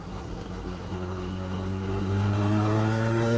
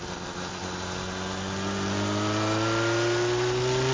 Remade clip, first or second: first